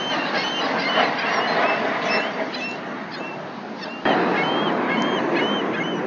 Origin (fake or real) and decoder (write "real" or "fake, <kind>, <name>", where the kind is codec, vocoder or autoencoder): real